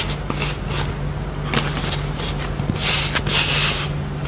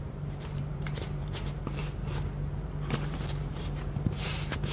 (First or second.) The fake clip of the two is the second